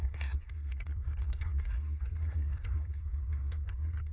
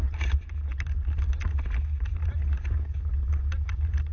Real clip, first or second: second